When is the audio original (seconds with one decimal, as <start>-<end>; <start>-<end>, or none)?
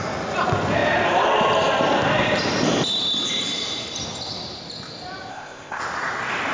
0.0-5.3; 5.8-6.5